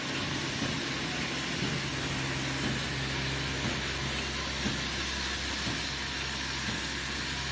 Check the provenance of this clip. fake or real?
real